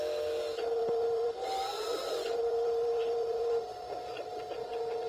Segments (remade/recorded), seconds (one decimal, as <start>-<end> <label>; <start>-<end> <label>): 0.0-0.8 recorded; 0.8-3.9 remade; 3.9-5.1 recorded